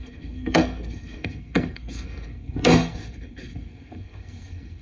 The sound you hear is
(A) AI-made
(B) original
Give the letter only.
A